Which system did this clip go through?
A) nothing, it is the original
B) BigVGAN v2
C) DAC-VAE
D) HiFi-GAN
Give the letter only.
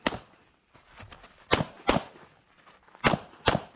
A